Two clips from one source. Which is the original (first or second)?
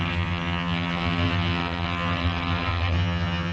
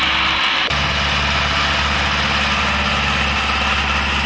second